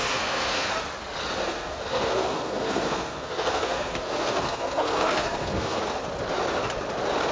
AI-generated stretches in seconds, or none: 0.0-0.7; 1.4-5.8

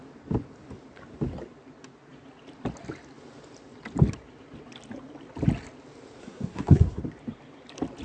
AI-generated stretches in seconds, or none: 6.2-7.0

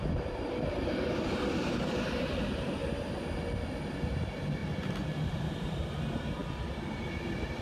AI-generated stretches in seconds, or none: 0.0-2.8; 3.9-4.6; 5.3-6.4

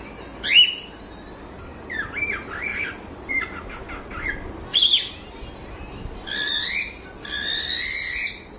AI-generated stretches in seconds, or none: 2.7-3.3

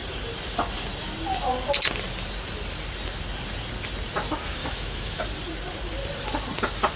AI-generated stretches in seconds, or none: 4.6-5.2

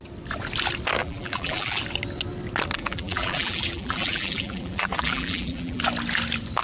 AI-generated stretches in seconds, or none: 1.0-1.8; 2.8-5.8

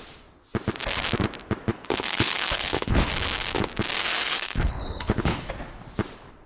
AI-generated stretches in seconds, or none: 1.7-3.1; 4.1-5.5

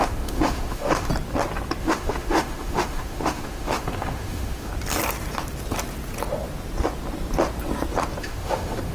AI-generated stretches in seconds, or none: 0.0-1.1; 1.8-4.7; 8.2-8.9